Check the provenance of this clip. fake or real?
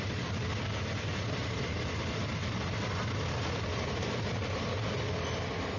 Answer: fake